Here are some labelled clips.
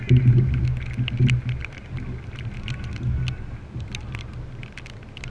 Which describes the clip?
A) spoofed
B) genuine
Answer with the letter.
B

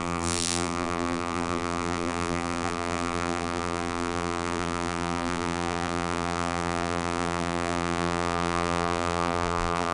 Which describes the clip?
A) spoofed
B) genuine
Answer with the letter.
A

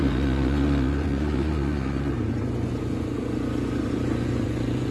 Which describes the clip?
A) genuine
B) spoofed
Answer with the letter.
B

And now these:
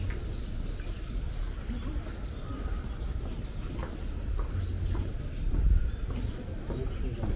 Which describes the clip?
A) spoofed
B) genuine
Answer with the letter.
B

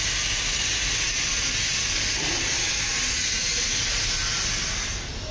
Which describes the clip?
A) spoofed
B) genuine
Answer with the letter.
B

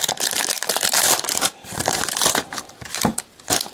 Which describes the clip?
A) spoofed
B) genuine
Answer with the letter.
A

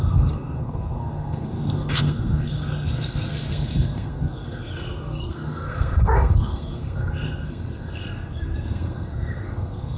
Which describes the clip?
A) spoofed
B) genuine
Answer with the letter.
A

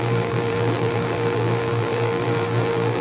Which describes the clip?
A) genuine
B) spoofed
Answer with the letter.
B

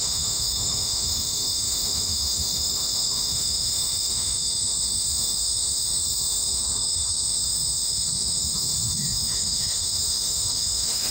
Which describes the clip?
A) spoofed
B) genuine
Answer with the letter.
A